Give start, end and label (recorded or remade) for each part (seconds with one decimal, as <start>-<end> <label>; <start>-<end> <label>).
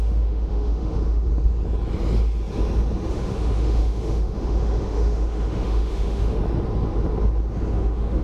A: 0.0-1.3 remade; 1.3-3.1 recorded; 3.1-6.4 remade; 6.4-7.7 recorded; 7.7-8.2 remade